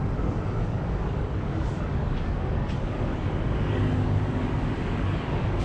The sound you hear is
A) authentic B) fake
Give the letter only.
B